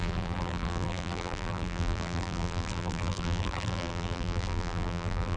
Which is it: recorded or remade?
remade